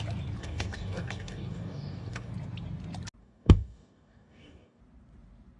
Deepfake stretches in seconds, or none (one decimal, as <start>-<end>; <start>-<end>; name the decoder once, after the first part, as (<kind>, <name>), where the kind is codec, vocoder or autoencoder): 0.4-2.3 (codec, DAC); 3.2-4.8